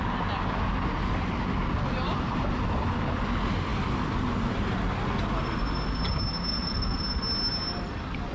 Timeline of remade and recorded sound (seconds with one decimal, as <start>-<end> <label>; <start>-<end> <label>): 0.0-6.5 recorded; 6.5-7.0 remade; 7.0-8.3 recorded